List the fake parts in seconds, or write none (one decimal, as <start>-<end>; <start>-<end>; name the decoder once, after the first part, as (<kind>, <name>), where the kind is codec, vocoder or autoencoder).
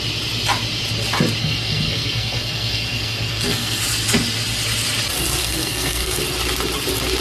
1.4-3.8 (codec, SNAC); 5.4-6.2